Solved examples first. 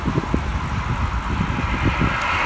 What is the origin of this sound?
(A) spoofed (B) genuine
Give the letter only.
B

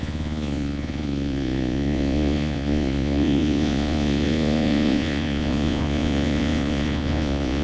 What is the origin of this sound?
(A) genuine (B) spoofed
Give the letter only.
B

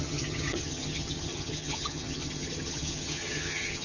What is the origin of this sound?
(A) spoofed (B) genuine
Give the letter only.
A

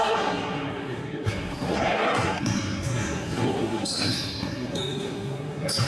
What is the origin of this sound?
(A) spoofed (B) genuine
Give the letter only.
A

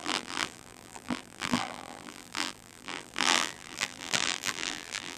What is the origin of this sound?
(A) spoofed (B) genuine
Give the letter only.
A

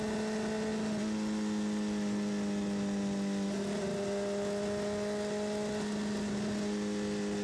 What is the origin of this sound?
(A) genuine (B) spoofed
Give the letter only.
A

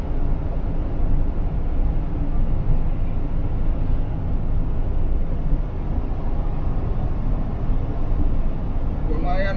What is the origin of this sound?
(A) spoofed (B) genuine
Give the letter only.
B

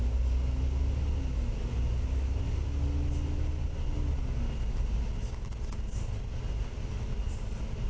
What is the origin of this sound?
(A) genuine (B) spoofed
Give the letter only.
A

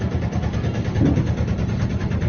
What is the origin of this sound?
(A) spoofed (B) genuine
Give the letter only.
B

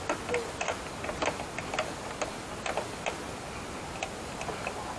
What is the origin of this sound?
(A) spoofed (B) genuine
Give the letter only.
B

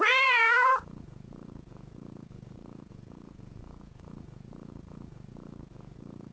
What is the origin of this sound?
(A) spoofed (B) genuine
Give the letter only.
A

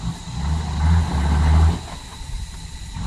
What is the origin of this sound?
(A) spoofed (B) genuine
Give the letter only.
B